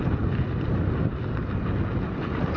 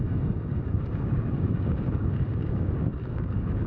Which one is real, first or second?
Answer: first